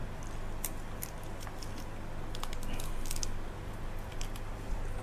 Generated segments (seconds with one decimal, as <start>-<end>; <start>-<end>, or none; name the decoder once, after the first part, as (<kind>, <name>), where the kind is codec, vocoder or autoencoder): none